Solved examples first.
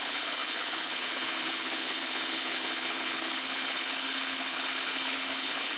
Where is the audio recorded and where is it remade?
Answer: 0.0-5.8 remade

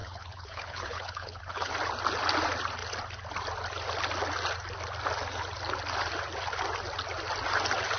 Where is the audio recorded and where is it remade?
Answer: 0.0-1.7 remade; 1.7-8.0 recorded